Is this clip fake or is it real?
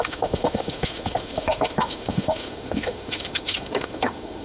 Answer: fake